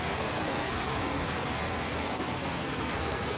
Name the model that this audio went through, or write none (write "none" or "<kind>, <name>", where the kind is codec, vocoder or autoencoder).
codec, SNAC